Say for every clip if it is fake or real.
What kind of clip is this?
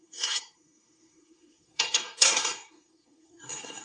fake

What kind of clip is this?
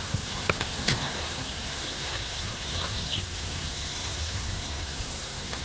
fake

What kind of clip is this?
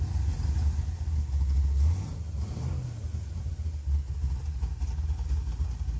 real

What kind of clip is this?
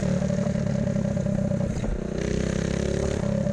real